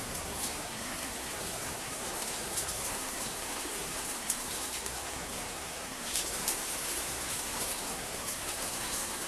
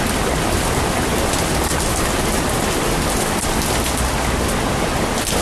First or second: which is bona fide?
second